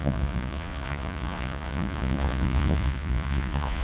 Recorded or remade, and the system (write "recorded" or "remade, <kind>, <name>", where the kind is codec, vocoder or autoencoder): remade, vocoder, Vocos